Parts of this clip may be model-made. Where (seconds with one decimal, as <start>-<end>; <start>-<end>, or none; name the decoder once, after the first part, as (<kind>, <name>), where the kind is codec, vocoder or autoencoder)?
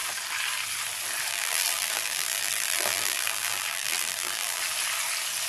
1.3-4.6 (vocoder, BigVGAN v2)